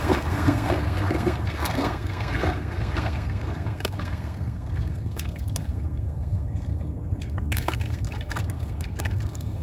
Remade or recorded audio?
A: remade